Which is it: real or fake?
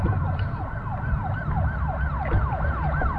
real